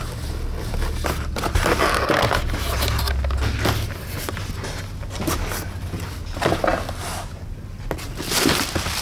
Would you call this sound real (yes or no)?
yes